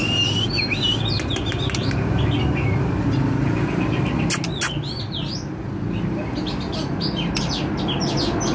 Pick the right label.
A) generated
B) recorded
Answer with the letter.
B